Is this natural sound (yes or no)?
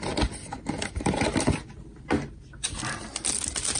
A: yes